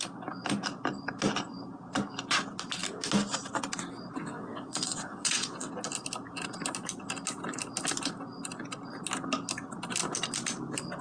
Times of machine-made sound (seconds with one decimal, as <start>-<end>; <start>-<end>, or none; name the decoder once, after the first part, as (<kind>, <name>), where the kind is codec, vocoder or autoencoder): 4.2-5.7 (vocoder, WaveNeXt)

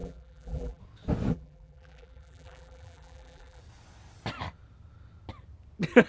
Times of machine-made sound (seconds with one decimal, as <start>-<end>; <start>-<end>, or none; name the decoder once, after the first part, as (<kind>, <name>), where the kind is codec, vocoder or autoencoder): 0.0-0.8 (vocoder, BigVGAN v2); 1.3-3.6

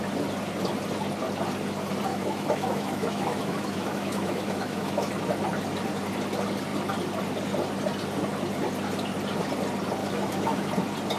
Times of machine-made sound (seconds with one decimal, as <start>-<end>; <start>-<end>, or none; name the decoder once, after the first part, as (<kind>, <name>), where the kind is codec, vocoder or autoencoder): 2.1-5.1 (autoencoder, DAC-VAE); 10.0-10.7

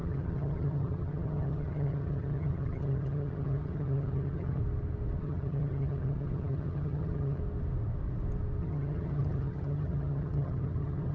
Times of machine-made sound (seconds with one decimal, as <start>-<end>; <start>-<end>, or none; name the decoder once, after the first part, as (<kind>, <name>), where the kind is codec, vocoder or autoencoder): 0.0-4.6 (vocoder, HiFi-GAN); 5.2-7.4; 8.6-11.1

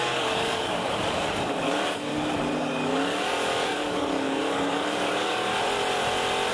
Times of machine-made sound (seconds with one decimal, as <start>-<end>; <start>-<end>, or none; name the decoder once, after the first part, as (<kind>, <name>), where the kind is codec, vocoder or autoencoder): 0.0-2.1 (codec, DAC); 2.6-5.5

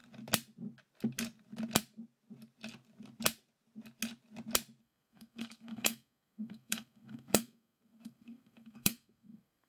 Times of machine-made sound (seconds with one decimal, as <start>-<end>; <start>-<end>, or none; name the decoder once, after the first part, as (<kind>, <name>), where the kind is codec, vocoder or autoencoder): 4.8-9.7 (codec, SNAC)